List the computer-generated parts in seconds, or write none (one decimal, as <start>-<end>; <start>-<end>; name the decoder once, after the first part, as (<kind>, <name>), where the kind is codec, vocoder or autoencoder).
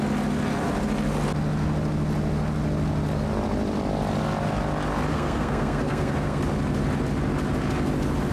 5.1-6.4 (codec, SNAC)